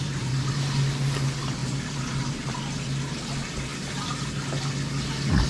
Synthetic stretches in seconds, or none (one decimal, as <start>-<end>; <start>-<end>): none